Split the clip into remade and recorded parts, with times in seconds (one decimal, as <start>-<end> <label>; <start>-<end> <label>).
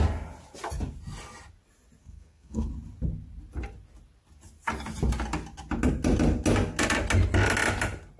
0.0-2.0 recorded; 2.0-2.7 remade; 2.7-8.2 recorded